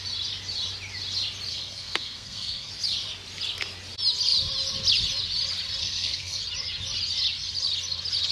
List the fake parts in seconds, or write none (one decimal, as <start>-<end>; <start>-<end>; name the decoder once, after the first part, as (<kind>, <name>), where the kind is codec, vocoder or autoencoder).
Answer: 1.5-2.7 (codec, SNAC); 5.8-6.4